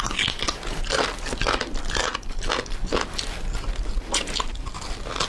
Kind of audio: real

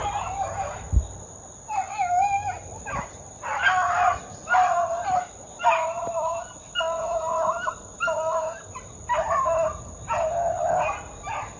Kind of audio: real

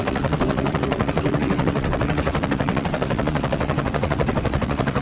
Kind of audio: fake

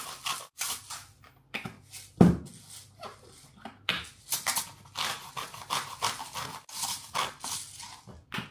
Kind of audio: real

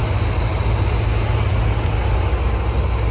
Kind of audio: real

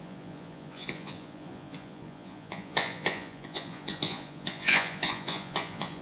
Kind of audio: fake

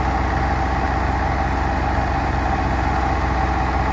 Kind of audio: real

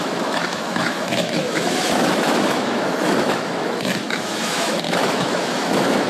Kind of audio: fake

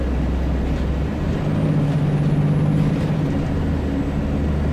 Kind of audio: real